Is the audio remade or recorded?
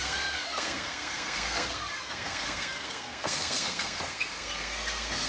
remade